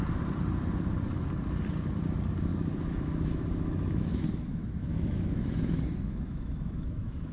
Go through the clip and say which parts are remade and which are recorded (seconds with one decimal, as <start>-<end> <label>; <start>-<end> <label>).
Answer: 0.0-2.5 recorded; 2.5-7.3 remade